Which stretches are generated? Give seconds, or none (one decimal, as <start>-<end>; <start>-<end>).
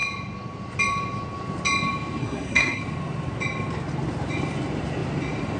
2.2-2.8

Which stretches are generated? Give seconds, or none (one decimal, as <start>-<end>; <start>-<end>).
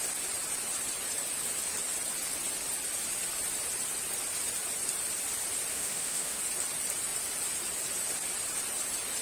5.7-6.4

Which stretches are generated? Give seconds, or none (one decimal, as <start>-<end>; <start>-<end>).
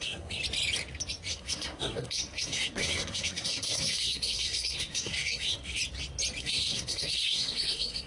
0.0-0.4; 1.3-5.8; 6.4-8.1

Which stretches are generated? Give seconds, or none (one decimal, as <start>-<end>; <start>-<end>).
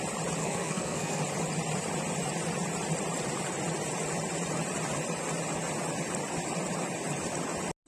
0.4-1.2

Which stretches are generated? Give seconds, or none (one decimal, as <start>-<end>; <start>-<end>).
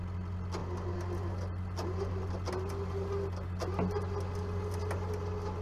none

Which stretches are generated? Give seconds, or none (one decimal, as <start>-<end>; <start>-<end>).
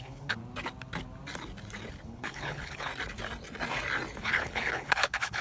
0.0-0.4; 1.9-2.9; 4.2-5.4